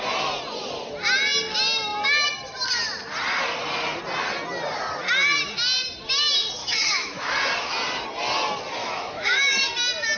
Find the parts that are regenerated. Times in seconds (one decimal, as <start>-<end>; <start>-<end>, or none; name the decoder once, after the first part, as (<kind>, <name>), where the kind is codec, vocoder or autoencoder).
6.6-7.3 (autoencoder, DAC-VAE); 8.8-9.7